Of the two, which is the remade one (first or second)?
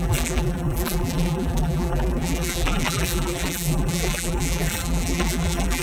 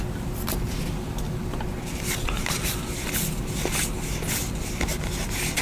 first